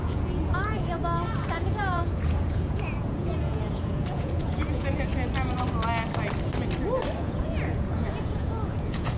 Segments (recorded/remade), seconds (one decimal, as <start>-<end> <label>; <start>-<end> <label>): 0.0-1.0 remade; 1.0-1.5 recorded; 1.5-5.1 remade; 5.1-7.2 recorded; 7.2-9.2 remade